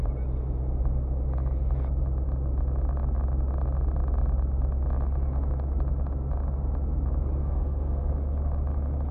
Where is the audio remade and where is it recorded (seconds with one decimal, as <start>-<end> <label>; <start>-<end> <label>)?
0.0-7.4 recorded; 7.4-8.1 remade; 8.1-9.1 recorded